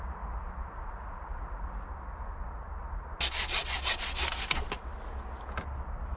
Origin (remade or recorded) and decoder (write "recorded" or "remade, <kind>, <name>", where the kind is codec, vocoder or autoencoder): recorded